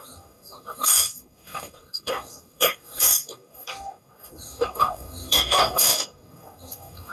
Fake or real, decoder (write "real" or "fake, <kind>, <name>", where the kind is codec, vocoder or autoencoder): fake, codec, DAC